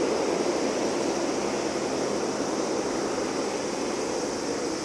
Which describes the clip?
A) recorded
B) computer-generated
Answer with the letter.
A